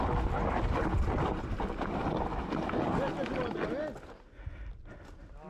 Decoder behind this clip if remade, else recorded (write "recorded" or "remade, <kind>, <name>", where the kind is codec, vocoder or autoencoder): recorded